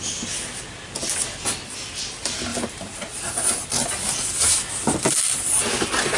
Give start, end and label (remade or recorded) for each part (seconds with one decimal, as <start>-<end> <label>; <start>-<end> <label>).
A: 0.0-2.5 recorded; 2.5-3.3 remade; 3.3-6.2 recorded